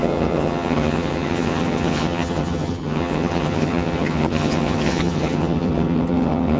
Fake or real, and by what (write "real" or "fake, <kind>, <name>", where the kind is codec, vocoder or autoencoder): fake, vocoder, HiFi-GAN